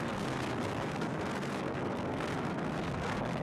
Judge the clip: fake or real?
fake